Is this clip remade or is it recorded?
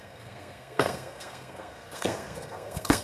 remade